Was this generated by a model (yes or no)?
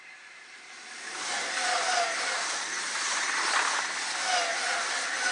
no